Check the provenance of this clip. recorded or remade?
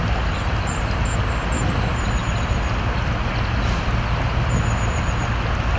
recorded